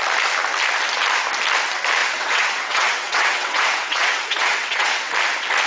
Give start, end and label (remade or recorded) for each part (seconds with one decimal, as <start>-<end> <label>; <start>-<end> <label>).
0.0-2.0 recorded; 2.0-5.1 remade; 5.1-5.7 recorded